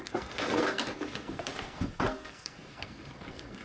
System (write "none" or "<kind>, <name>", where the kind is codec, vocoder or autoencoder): codec, SNAC